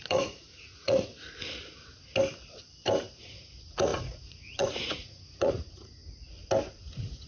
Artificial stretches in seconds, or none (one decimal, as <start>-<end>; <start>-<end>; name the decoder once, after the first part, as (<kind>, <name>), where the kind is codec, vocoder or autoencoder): 0.0-1.1 (vocoder, Vocos); 3.2-6.0; 6.7-7.3